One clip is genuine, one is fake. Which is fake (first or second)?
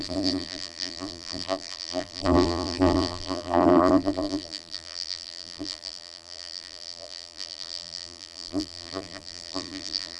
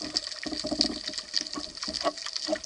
first